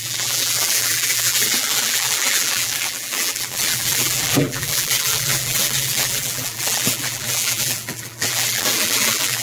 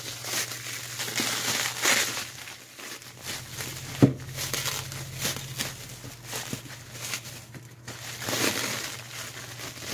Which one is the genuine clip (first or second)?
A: second